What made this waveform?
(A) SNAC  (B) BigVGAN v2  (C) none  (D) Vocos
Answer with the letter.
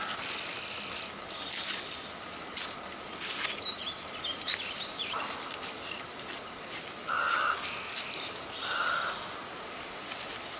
C